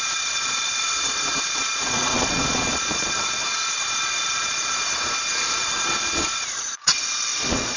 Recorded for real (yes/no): no